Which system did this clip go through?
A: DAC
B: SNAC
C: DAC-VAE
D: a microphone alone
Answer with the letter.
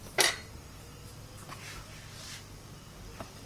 D